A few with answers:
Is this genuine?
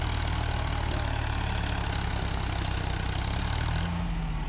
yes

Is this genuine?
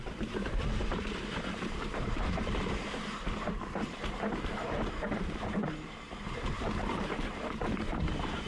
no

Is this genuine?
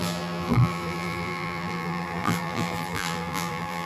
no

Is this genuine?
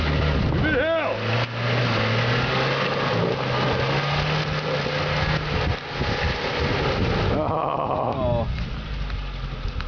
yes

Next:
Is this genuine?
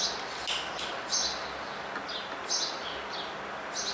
yes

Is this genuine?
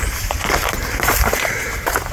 no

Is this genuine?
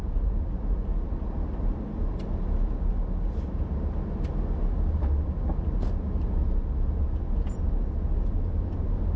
yes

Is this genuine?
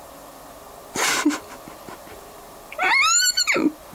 no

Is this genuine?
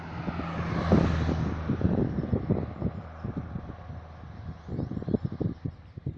yes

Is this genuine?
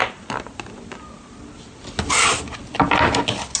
yes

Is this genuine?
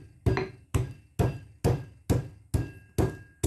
yes